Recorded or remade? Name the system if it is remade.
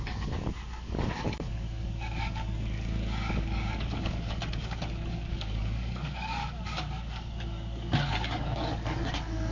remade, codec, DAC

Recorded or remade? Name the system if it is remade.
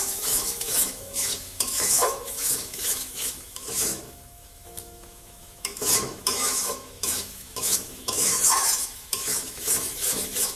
remade, autoencoder, DAC-VAE